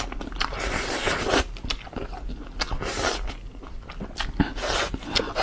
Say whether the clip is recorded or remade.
recorded